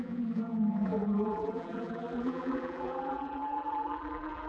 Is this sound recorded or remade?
remade